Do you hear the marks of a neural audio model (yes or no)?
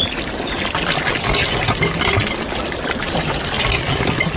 no